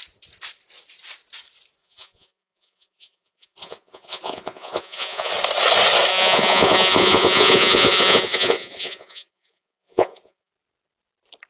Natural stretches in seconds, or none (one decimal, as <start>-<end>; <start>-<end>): 0.0-1.8; 5.3-6.1; 10.5-11.5

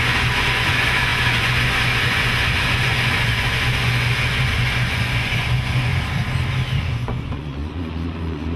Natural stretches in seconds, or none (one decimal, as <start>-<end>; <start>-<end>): 5.9-6.8